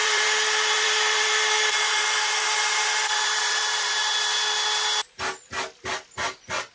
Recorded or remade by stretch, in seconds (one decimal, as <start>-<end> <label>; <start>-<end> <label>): 0.0-4.0 remade; 4.0-6.7 recorded